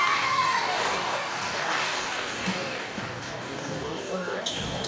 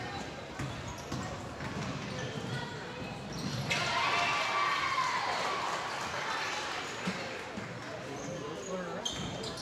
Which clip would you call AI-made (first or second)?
first